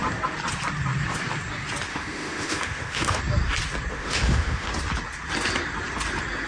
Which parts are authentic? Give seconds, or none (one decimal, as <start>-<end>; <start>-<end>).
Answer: 0.0-1.9; 3.2-3.9; 4.7-6.5